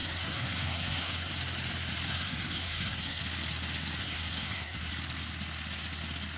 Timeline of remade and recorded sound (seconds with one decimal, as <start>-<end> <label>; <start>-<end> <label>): 0.0-1.3 remade; 1.3-2.1 recorded; 2.1-3.2 remade; 3.2-4.0 recorded; 4.0-4.9 remade; 4.9-6.4 recorded